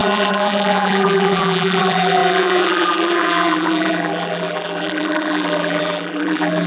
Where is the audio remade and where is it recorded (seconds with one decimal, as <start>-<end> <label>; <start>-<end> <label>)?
0.0-6.7 remade